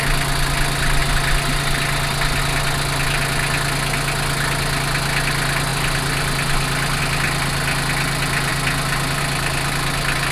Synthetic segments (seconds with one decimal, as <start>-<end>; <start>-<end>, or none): none